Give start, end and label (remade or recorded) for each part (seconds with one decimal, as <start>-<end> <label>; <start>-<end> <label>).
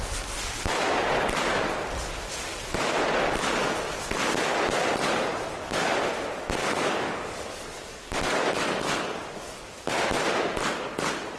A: 0.0-5.3 recorded; 5.3-5.9 remade; 5.9-6.6 recorded; 6.6-9.8 remade; 9.8-11.4 recorded